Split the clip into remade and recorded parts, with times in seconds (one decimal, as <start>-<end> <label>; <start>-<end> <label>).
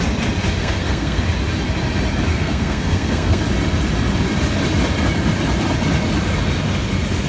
0.0-0.6 recorded; 0.6-1.2 remade; 1.2-2.3 recorded; 2.3-3.4 remade; 3.4-7.3 recorded